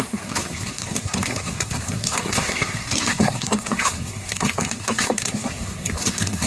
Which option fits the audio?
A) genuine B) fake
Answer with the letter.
B